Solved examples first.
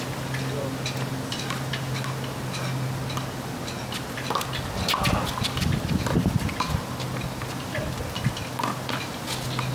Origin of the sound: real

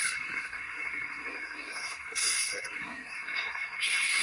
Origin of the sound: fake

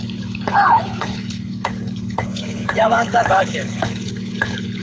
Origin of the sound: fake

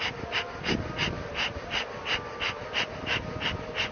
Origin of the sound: real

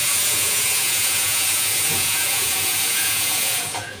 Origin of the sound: fake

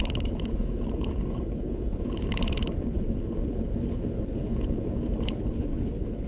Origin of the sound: fake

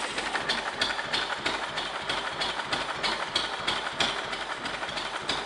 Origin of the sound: real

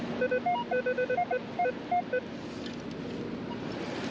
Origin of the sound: real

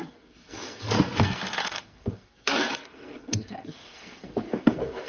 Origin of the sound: fake